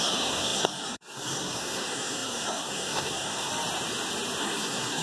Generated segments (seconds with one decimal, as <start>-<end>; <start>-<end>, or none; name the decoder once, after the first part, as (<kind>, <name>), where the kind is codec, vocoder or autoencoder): 0.0-3.5 (codec, SNAC); 4.4-5.0